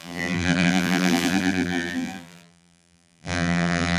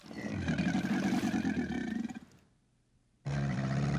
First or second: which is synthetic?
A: first